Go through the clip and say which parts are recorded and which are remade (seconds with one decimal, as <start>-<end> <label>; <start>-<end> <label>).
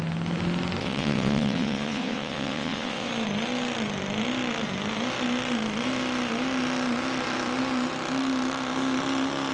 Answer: 0.0-0.8 recorded; 0.8-3.1 remade; 3.1-9.5 recorded